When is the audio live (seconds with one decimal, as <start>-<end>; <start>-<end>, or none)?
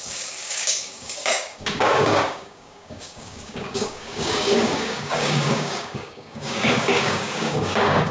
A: none